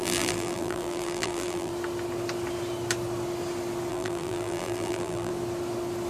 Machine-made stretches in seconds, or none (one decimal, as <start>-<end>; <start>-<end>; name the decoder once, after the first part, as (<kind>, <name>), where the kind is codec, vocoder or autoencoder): 0.0-1.7 (vocoder, BigVGAN v2); 3.9-5.3